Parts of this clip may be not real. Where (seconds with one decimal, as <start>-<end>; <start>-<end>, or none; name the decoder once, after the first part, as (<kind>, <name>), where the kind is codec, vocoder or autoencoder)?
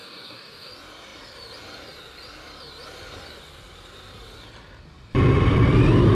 0.0-0.7 (codec, DAC)